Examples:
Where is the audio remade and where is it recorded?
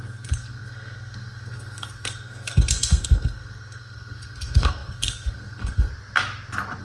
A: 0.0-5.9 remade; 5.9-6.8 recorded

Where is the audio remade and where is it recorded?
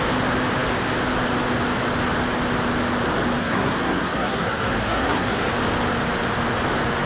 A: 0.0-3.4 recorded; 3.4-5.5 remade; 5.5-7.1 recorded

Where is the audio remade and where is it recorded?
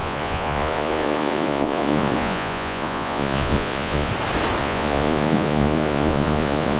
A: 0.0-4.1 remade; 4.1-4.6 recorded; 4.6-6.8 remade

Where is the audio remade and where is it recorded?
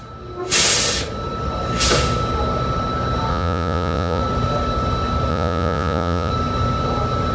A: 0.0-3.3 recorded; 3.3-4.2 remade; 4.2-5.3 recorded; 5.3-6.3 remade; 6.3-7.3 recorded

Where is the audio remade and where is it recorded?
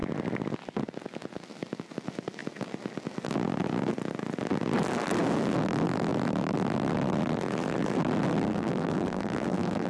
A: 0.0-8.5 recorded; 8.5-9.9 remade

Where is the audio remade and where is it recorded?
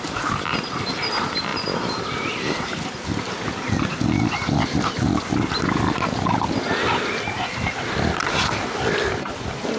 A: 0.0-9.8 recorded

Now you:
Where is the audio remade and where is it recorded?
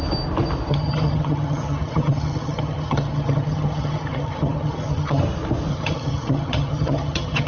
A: 0.0-0.7 recorded; 0.7-5.2 remade; 5.2-5.7 recorded; 5.7-7.5 remade